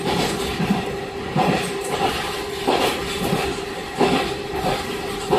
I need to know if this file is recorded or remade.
recorded